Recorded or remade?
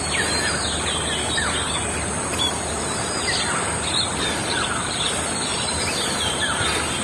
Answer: recorded